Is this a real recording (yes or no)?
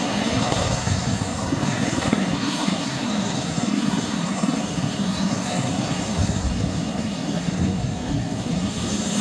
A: no